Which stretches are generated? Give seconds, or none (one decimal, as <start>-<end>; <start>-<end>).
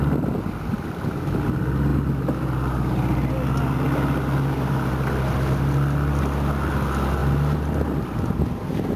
1.9-6.2; 7.2-7.8